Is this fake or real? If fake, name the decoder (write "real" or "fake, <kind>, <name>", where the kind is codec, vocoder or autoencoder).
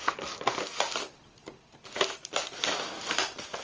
real